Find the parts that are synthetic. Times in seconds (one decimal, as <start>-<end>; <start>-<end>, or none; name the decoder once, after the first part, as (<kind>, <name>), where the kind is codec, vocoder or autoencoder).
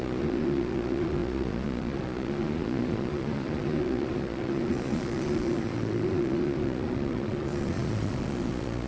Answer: 0.0-8.9 (vocoder, Vocos)